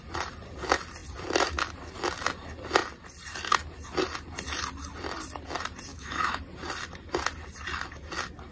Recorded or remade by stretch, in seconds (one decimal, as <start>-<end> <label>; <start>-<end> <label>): 0.0-5.9 recorded; 5.9-6.4 remade; 6.4-8.5 recorded